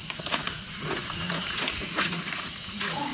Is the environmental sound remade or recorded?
remade